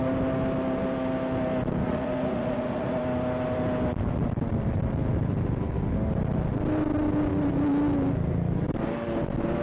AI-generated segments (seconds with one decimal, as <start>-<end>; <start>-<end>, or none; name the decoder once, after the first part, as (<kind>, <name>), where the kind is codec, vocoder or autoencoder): 1.8-3.0 (vocoder, Vocos)